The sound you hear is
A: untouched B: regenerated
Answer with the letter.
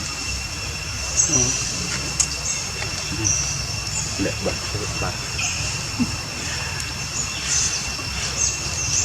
A